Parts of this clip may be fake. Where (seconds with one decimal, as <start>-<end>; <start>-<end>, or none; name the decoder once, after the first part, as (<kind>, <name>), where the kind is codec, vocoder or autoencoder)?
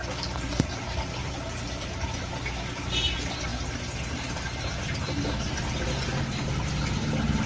0.0-0.5 (vocoder, BigVGAN v2); 1.2-2.2